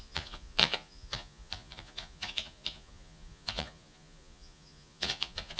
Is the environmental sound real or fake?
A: fake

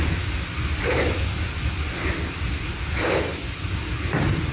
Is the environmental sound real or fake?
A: real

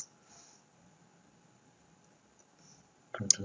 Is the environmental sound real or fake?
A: real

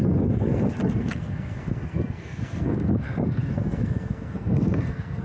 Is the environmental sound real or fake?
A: fake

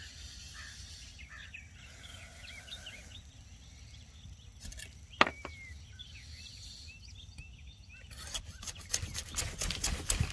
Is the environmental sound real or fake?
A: real